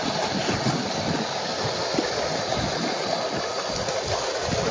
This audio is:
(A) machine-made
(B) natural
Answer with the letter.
B